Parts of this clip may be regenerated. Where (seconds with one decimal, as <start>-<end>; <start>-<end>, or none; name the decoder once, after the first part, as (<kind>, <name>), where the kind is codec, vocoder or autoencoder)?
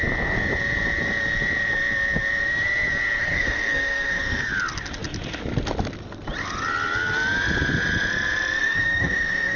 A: 3.2-4.4 (codec, SNAC); 8.6-9.6